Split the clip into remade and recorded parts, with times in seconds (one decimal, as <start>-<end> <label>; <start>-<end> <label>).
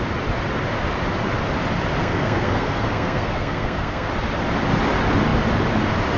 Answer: 0.0-2.0 recorded; 2.0-4.1 remade; 4.1-6.2 recorded